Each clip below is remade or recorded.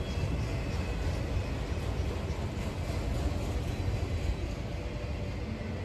recorded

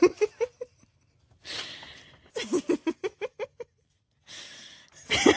recorded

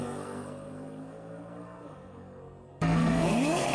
remade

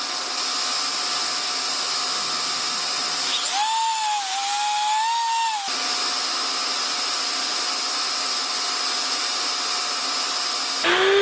recorded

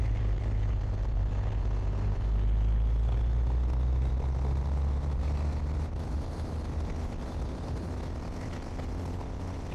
recorded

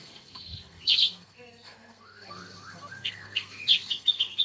remade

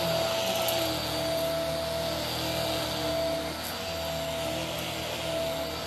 recorded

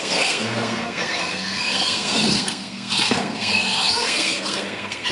remade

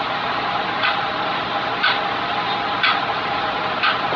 recorded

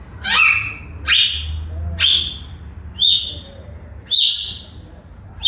recorded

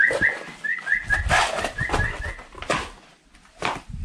recorded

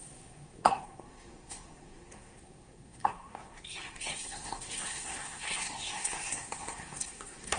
remade